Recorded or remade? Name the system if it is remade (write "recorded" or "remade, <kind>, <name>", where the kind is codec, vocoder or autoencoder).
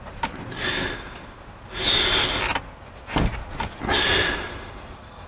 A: recorded